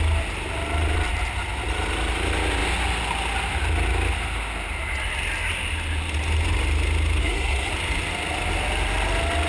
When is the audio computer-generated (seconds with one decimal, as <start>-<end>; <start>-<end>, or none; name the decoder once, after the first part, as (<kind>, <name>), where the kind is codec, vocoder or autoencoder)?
7.2-7.7 (codec, SNAC)